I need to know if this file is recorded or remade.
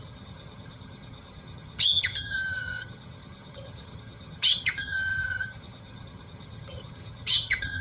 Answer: remade